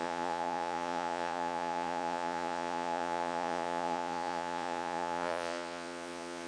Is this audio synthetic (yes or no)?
yes